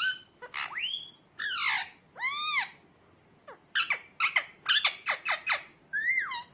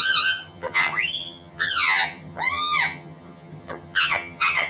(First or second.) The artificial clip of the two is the second